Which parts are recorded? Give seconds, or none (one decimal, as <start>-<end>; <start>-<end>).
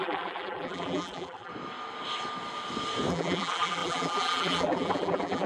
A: 1.5-3.1